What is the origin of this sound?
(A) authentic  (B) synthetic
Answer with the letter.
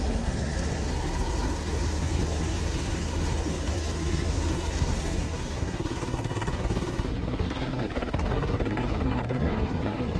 B